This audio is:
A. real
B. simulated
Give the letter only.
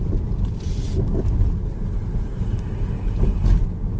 A